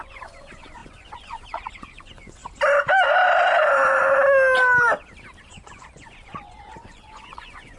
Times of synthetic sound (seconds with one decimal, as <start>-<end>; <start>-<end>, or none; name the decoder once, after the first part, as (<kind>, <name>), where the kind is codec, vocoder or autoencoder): 0.0-2.4 (vocoder, Vocos); 5.4-7.8